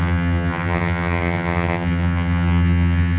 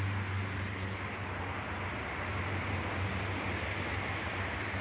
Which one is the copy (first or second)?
first